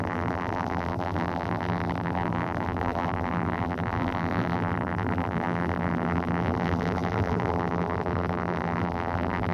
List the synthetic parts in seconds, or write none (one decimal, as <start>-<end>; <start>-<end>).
0.0-9.5